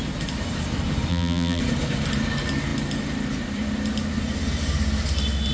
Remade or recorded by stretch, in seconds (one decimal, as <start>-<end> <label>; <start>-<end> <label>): 0.0-1.1 recorded; 1.1-1.6 remade; 1.6-5.5 recorded